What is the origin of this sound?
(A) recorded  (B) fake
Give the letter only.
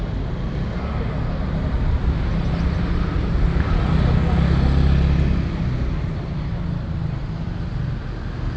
A